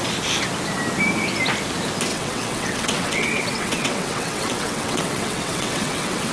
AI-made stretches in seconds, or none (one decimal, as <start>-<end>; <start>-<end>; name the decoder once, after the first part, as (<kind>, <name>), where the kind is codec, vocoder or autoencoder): 2.1-6.3 (vocoder, WaveNeXt)